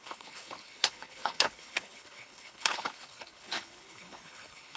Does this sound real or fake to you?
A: fake